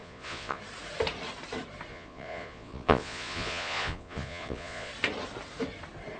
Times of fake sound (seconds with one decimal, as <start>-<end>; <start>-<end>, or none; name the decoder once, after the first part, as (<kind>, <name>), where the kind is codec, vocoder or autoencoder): 0.0-0.6 (vocoder, Vocos); 1.9-4.9